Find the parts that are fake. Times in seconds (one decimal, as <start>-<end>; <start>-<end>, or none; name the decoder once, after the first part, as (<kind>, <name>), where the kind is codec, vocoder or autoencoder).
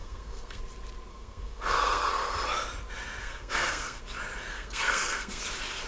0.0-0.6 (codec, SNAC); 1.1-2.1; 3.2-4.0; 4.5-5.4